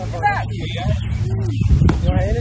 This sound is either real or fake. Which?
real